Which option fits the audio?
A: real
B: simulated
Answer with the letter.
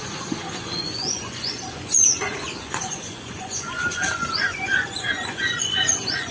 B